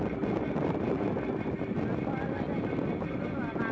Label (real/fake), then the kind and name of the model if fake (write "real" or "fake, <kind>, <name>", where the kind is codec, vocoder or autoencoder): real